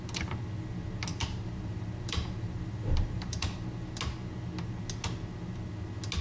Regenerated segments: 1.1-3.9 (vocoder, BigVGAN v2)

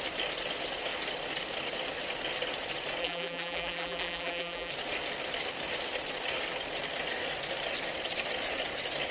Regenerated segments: 3.0-4.7 (vocoder, BigVGAN v2)